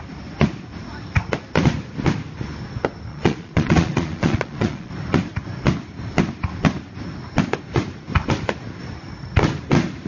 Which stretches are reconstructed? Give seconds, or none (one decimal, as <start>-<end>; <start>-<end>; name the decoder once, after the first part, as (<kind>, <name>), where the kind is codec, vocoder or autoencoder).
3.1-4.9 (vocoder, Vocos)